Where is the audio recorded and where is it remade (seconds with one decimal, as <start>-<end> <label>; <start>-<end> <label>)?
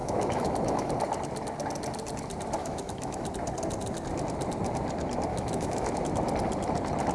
0.0-0.9 remade; 0.9-2.6 recorded; 2.6-3.3 remade; 3.3-5.3 recorded; 5.3-6.0 remade; 6.0-7.1 recorded